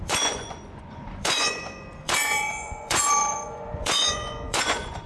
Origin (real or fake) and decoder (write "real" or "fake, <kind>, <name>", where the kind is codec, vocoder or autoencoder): fake, vocoder, Vocos